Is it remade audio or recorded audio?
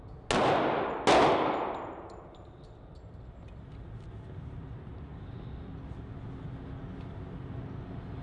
recorded